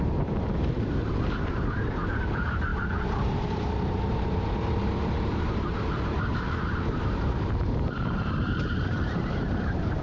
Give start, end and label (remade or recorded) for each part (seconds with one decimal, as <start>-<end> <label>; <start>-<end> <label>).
0.0-10.0 remade